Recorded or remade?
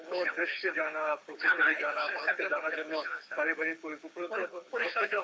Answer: remade